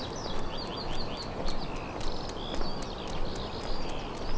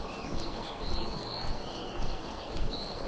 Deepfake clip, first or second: second